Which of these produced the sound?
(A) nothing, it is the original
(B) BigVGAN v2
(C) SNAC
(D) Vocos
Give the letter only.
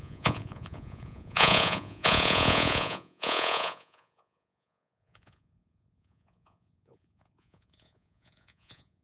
D